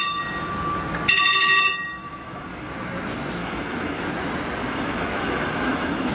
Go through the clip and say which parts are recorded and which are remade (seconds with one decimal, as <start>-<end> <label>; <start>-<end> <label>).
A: 0.0-2.0 recorded; 2.0-2.7 remade; 2.7-3.4 recorded; 3.4-4.0 remade; 4.0-4.6 recorded; 4.6-6.1 remade